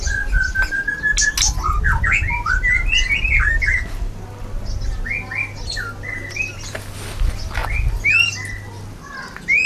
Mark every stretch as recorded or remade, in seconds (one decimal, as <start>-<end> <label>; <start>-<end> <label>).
0.0-9.7 recorded